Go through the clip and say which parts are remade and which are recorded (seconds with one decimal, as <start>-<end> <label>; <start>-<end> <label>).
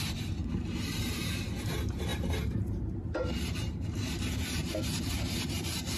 0.0-0.4 remade; 0.4-1.0 recorded; 1.0-6.0 remade